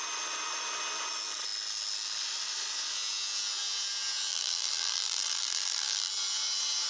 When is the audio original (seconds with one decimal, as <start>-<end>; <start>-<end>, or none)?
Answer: 0.0-4.3; 6.1-6.9